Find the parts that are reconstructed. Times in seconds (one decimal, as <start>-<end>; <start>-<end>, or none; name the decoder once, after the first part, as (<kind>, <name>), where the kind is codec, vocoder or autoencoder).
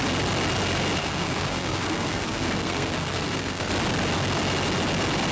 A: 1.0-3.7 (codec, SNAC)